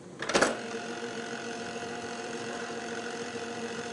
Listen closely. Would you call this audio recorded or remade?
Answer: remade